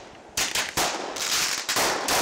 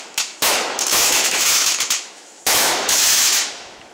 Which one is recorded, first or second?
first